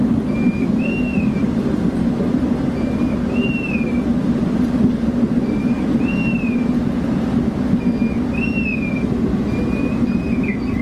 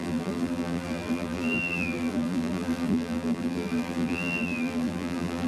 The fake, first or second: second